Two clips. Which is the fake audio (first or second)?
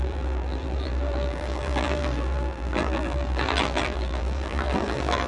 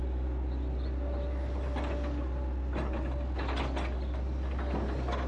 first